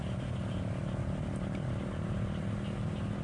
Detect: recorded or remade recorded